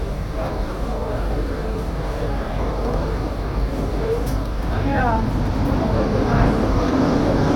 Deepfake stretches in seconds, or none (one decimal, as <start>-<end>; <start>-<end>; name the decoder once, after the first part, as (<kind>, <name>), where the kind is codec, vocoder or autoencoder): 0.0-5.0 (codec, DAC); 5.8-7.6